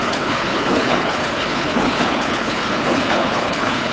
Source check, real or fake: fake